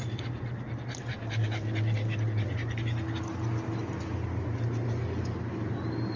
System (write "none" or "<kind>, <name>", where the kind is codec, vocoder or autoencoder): none